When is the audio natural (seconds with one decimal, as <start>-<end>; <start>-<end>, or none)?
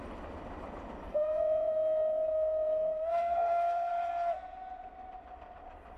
0.0-1.1; 3.9-6.0